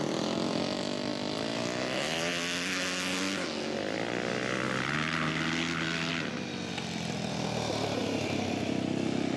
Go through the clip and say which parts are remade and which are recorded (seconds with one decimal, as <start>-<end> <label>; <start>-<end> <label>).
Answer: 0.0-8.0 recorded; 8.0-8.7 remade; 8.7-9.4 recorded